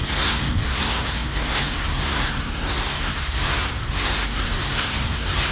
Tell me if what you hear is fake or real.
fake